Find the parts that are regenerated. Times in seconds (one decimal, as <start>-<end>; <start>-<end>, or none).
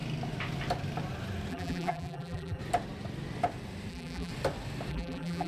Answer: 1.5-2.6; 3.9-4.3; 4.9-5.5